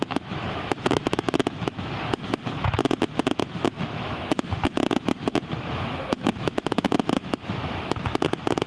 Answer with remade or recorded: remade